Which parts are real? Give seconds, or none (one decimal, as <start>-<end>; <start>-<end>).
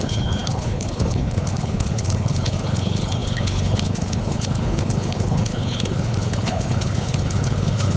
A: none